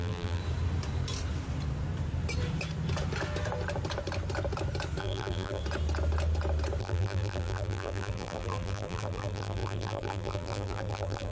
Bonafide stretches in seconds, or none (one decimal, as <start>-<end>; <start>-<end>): 0.4-5.0; 5.6-6.8